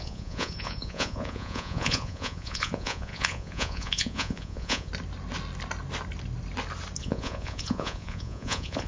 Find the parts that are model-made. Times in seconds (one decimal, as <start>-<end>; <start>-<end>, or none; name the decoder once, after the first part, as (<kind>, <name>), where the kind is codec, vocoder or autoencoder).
0.0-4.9 (vocoder, Vocos); 7.0-8.9

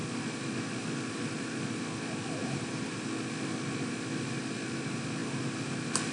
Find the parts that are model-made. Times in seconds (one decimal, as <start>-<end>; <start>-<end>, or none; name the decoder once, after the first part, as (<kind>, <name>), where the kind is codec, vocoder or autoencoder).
2.4-3.1 (vocoder, BigVGAN v2)